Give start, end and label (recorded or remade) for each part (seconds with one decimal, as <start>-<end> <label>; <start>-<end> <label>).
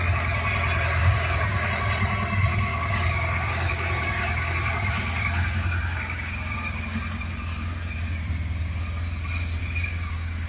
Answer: 0.0-1.0 recorded; 1.0-1.7 remade; 1.7-2.7 recorded; 2.7-6.8 remade; 6.8-9.6 recorded; 9.6-10.5 remade